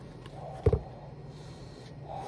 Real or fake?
real